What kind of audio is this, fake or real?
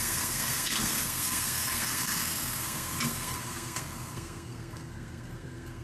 fake